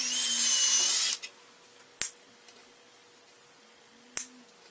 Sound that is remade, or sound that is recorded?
recorded